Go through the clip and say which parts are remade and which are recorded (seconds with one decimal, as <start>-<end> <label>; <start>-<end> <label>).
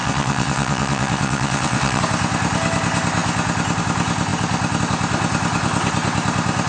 0.0-2.0 remade; 2.0-6.7 recorded